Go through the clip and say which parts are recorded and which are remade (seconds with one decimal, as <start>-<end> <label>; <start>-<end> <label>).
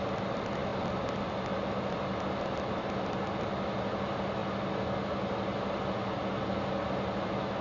0.0-7.6 recorded